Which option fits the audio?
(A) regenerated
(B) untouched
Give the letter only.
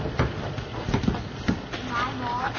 B